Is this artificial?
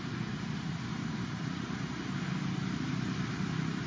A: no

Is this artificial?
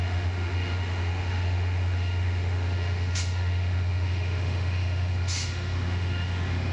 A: yes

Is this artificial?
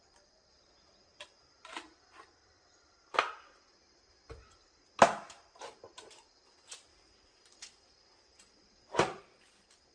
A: no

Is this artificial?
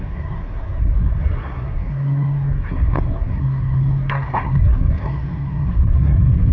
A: yes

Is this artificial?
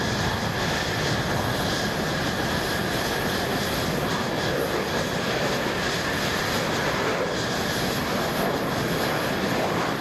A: no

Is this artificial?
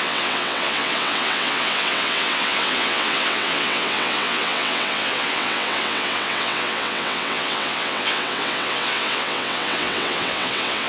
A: yes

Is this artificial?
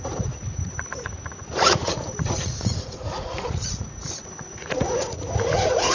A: yes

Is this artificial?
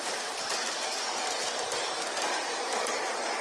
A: no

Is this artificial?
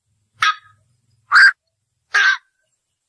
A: no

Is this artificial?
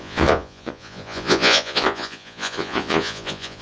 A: yes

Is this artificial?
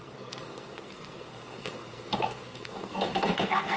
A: yes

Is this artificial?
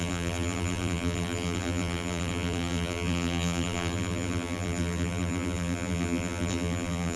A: yes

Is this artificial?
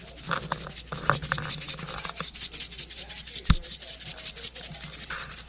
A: no